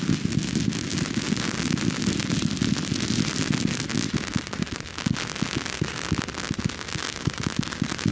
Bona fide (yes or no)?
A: yes